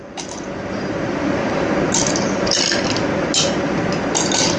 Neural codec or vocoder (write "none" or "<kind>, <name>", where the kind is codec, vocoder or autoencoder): none